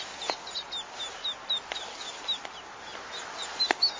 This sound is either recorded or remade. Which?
recorded